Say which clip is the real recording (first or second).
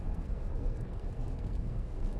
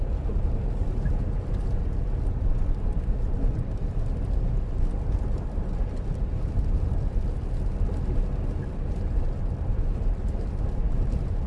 second